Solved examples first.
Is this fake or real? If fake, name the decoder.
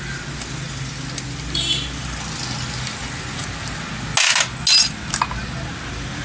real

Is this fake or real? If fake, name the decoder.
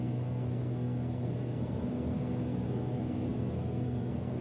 fake, codec, SNAC